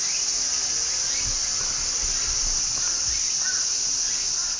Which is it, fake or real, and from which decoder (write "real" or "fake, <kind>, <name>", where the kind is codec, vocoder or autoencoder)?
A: real